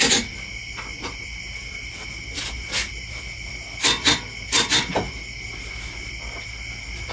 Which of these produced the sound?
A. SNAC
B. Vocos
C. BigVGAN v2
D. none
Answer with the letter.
D